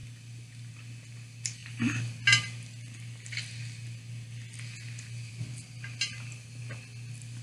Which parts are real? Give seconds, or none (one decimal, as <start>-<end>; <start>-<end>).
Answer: 0.0-7.4